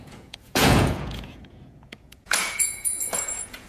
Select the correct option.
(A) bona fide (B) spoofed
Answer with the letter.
B